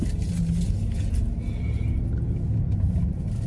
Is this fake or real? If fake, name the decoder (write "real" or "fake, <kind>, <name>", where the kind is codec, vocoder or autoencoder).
real